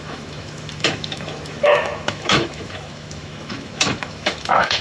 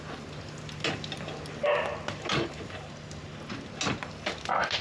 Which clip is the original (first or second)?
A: second